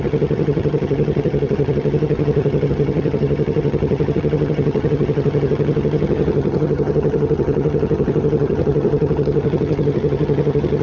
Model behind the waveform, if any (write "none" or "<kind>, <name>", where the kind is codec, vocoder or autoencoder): vocoder, HiFi-GAN